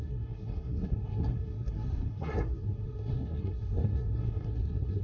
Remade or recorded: remade